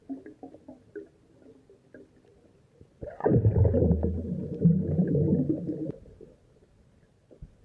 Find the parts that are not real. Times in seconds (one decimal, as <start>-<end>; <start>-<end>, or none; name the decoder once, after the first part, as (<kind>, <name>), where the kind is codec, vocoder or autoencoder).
none